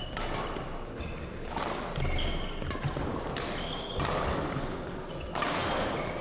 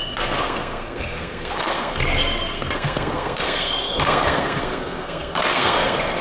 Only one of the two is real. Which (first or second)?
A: first